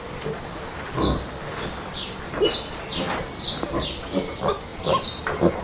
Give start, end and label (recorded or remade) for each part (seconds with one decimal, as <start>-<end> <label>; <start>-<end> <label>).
0.0-5.6 recorded